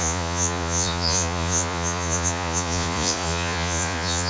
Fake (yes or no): yes